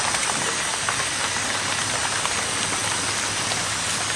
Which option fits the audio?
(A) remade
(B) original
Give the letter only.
B